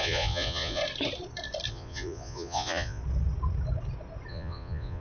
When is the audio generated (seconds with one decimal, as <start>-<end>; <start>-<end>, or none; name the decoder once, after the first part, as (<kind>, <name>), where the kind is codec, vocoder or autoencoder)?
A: 0.0-0.8 (vocoder, Vocos); 1.7-3.0; 4.3-5.0